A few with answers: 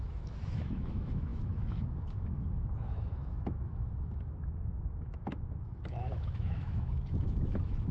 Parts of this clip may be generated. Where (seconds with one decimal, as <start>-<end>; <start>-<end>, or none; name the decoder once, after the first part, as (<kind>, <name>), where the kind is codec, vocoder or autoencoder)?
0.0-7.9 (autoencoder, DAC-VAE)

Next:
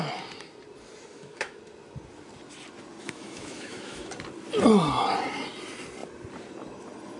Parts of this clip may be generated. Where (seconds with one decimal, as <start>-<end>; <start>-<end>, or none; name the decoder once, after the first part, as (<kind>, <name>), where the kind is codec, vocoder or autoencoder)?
1.1-1.6 (autoencoder, DAC-VAE); 3.0-4.1

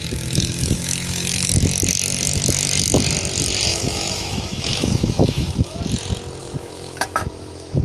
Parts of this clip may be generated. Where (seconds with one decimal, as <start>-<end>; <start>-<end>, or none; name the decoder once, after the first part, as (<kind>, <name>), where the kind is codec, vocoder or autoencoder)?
0.0-1.5 (autoencoder, DAC-VAE); 3.7-5.8; 6.4-7.8

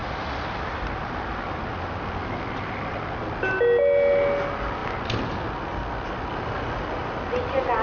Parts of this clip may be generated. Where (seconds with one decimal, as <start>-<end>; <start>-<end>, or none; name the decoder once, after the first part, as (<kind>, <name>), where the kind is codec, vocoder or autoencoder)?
none

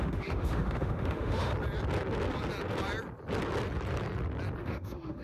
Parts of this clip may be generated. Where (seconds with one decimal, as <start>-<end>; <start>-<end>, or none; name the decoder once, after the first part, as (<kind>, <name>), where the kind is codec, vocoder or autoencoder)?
0.0-1.5 (autoencoder, DAC-VAE); 4.6-5.2